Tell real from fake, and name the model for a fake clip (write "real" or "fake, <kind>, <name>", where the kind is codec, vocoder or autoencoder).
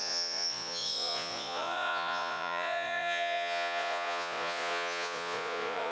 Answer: fake, vocoder, Vocos